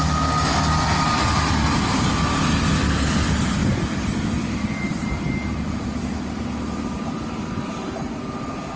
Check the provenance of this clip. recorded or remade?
recorded